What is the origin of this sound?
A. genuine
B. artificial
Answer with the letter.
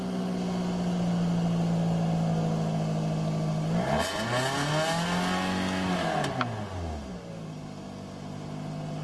A